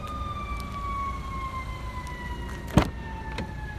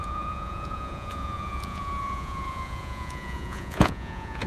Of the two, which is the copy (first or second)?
second